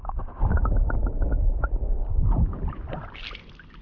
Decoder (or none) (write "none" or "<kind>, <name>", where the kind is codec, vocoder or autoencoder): none